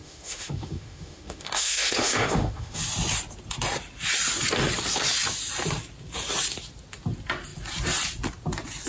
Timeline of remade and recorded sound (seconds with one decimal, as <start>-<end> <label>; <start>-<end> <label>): 0.0-2.8 remade; 2.8-8.9 recorded